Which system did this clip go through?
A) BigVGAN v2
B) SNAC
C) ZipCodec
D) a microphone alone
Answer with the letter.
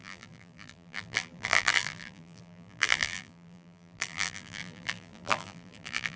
A